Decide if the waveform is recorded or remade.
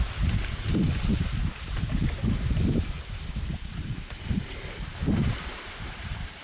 remade